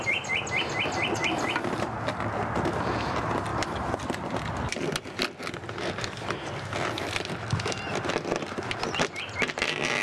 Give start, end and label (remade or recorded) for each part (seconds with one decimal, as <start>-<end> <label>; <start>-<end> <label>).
0.0-10.0 recorded